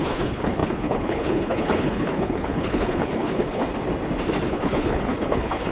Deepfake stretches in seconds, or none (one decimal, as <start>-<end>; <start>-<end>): 0.0-3.6; 4.5-5.7